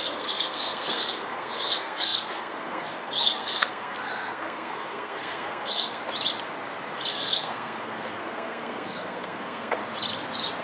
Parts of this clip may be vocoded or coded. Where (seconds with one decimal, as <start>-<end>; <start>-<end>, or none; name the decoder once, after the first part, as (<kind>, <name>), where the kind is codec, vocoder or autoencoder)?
0.0-6.0 (codec, SNAC); 7.1-9.8